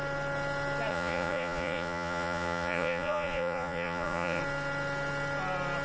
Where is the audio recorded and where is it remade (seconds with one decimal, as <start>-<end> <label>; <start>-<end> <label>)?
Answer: 0.0-0.9 recorded; 0.9-4.4 remade; 4.4-5.8 recorded

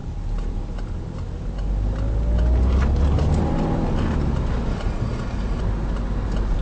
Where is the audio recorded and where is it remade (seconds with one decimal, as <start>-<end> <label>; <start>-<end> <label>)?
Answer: 0.0-4.7 recorded; 4.7-5.6 remade; 5.6-6.6 recorded

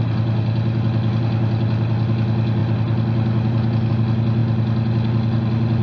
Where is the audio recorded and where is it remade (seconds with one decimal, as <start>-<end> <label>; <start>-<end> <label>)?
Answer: 0.0-5.8 recorded

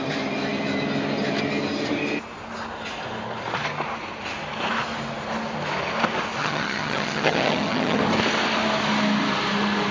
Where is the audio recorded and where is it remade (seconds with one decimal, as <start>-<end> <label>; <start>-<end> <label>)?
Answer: 0.0-6.4 recorded; 6.4-8.0 remade; 8.0-9.9 recorded

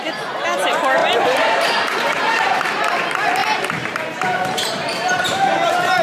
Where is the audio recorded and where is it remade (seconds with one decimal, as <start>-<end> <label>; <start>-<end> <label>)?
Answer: 0.0-1.0 recorded; 1.0-2.6 remade; 2.6-3.4 recorded; 3.4-5.4 remade; 5.4-6.0 recorded